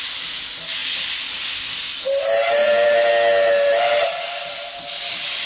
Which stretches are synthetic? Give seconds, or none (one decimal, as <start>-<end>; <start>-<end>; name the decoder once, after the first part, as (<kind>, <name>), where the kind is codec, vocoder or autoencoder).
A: 2.6-3.1 (vocoder, BigVGAN v2)